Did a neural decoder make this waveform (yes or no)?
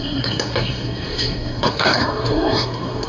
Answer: yes